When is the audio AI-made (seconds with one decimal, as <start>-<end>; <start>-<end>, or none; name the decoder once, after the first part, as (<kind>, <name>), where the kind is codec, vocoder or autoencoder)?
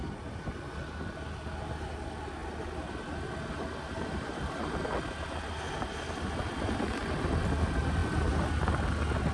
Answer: none